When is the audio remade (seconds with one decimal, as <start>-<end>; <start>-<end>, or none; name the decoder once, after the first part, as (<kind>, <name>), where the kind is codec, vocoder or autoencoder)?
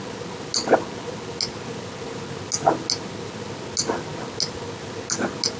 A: none